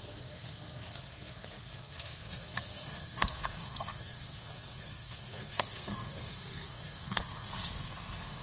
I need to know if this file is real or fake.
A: fake